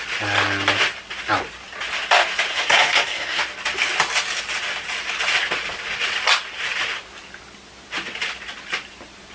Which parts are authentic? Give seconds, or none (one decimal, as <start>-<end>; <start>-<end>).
0.0-2.5; 3.4-9.3